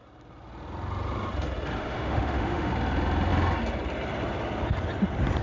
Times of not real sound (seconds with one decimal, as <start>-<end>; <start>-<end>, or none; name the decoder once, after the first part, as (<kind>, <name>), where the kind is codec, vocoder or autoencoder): 1.8-2.7 (autoencoder, DAC-VAE)